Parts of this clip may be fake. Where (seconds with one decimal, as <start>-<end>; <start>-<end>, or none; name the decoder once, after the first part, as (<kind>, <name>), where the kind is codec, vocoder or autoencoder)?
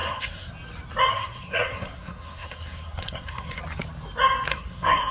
0.0-0.5 (codec, SNAC); 1.1-3.6; 4.5-5.1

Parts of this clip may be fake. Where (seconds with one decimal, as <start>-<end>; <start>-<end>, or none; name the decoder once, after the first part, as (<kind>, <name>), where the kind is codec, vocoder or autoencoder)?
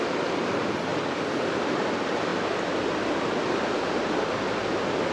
none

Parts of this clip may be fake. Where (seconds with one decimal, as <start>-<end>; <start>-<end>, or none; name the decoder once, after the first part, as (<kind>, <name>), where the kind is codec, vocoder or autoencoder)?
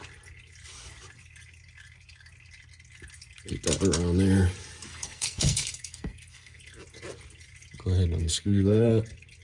4.9-6.6 (codec, SNAC); 8.2-8.9